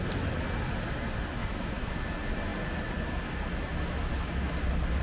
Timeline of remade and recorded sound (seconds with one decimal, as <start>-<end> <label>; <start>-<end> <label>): 0.0-1.4 recorded; 1.4-1.9 remade; 1.9-5.0 recorded